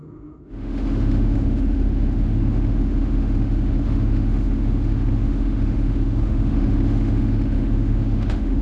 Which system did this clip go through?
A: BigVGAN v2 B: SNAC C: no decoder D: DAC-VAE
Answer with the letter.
D